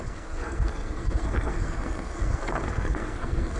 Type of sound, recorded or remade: remade